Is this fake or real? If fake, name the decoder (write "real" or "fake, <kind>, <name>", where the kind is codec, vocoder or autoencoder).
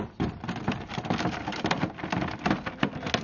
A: real